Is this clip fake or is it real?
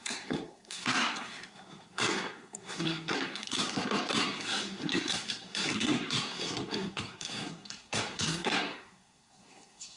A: fake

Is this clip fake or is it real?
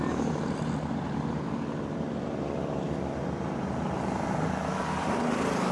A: real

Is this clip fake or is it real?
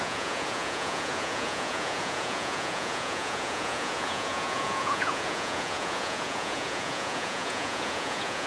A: fake